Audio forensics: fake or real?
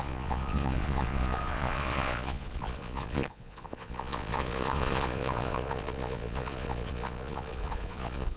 fake